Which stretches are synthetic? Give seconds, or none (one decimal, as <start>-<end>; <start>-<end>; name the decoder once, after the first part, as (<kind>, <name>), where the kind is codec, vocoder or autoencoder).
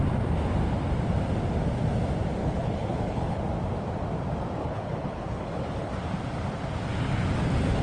2.4-3.4 (codec, HILCodec); 4.6-5.9